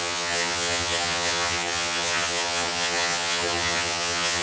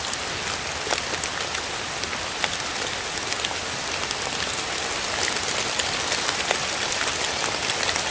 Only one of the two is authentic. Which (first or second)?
second